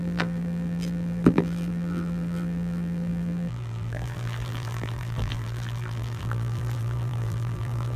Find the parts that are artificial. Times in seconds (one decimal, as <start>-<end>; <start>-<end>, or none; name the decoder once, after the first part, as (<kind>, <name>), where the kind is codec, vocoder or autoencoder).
0.0-8.0 (vocoder, BigVGAN v2)